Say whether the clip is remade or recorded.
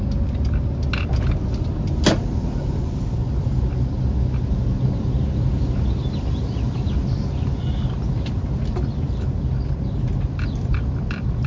recorded